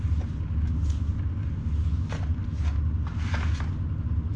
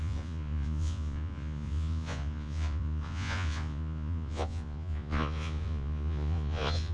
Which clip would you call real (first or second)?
first